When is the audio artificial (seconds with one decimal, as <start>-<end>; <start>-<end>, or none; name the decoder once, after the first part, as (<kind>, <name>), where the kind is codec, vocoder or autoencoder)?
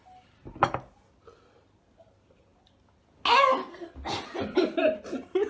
none